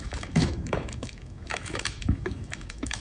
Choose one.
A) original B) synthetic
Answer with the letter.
B